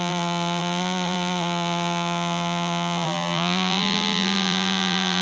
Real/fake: fake